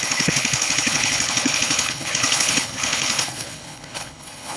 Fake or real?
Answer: fake